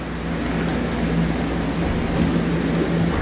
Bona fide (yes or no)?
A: yes